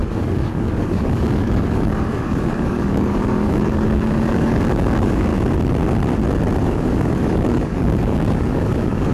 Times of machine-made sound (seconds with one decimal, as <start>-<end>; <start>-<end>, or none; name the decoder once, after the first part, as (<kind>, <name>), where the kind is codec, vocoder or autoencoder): 0.0-5.3 (codec, DAC); 6.6-9.1

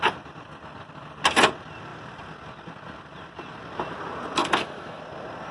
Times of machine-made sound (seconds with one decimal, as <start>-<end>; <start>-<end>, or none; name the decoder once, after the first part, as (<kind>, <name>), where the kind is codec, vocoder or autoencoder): 4.4-5.0 (autoencoder, DAC-VAE)

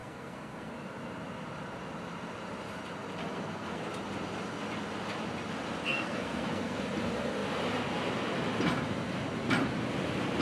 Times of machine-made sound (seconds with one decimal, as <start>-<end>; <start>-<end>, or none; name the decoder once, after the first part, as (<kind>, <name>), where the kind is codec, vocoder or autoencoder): 0.0-0.7 (codec, SNAC); 3.2-3.8; 5.8-6.8

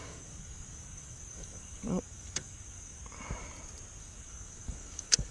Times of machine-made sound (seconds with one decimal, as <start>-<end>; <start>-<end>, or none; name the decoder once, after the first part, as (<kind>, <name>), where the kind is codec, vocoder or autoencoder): 0.0-3.0 (codec, DAC); 4.0-5.3